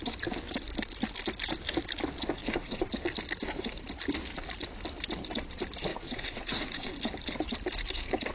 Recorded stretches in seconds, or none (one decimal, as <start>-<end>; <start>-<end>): 0.0-2.4; 2.9-5.9; 6.9-8.3